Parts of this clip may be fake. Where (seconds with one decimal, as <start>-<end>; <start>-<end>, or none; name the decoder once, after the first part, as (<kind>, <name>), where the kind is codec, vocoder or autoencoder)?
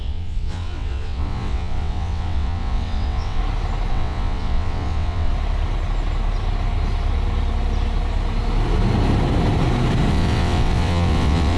0.0-3.4 (vocoder, WaveNeXt); 3.9-5.3; 10.1-11.6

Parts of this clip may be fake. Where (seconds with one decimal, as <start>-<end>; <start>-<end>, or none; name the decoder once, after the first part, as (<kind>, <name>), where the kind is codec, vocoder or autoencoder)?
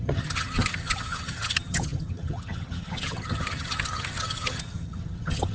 0.0-5.5 (vocoder, HiFi-GAN)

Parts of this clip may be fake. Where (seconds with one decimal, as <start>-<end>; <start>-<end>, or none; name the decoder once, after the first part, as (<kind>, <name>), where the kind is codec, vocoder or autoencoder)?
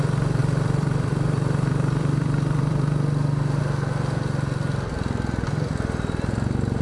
0.4-3.6 (vocoder, BigVGAN v2)